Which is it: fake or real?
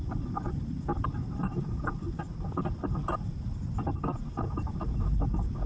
fake